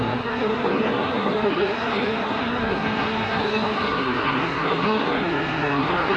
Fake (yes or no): yes